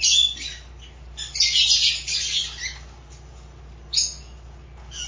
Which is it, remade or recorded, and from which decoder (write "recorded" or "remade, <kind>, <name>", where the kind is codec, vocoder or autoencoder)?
recorded